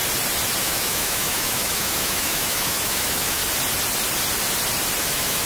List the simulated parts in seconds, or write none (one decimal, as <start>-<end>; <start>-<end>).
0.6-3.4; 5.0-5.5